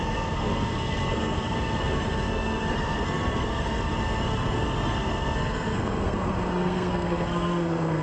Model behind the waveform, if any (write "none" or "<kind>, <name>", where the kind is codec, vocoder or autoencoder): codec, SNAC